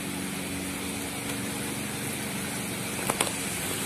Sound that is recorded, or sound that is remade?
recorded